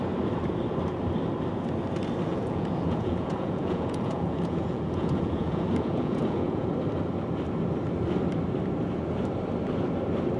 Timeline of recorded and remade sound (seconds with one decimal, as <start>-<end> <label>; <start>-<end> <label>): 0.0-2.3 recorded; 2.3-6.7 remade; 6.7-10.4 recorded